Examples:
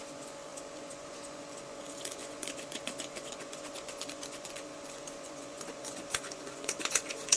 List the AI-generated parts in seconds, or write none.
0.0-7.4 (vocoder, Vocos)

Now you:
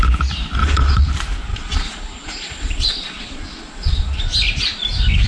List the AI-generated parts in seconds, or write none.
0.6-1.1 (vocoder, Vocos); 1.5-4.2

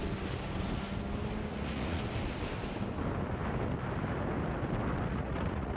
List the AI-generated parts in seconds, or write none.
1.5-2.0 (vocoder, Vocos); 5.1-5.8

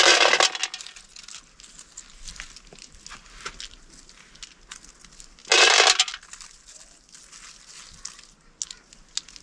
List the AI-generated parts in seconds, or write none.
none

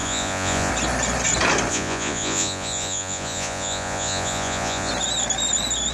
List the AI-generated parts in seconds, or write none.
0.0-0.7 (vocoder, Vocos); 1.7-4.9

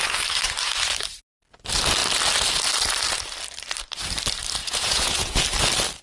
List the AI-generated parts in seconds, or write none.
4.6-5.4 (vocoder, Vocos)

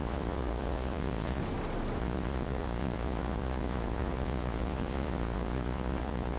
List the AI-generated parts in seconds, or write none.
0.0-1.4 (vocoder, Vocos); 2.0-6.4